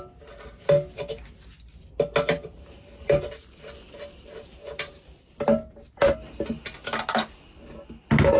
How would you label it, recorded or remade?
recorded